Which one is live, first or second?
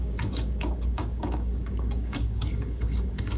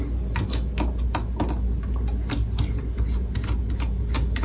second